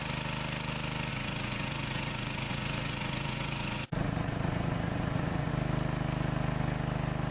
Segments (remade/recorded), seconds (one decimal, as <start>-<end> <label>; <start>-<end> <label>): 0.0-1.1 recorded; 1.1-5.5 remade; 5.5-7.3 recorded